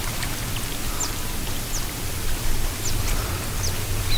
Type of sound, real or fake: real